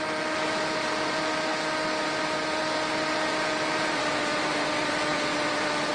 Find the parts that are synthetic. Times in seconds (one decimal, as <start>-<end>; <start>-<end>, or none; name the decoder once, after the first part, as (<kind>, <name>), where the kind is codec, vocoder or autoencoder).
0.0-1.5 (vocoder, BigVGAN v2); 2.0-2.6; 3.1-5.9